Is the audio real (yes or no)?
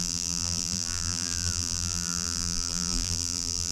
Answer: no